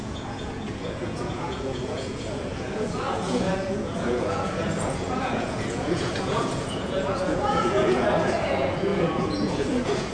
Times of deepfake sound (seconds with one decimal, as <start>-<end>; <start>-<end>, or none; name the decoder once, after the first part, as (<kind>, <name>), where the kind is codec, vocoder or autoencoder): 0.0-10.1 (vocoder, Vocos)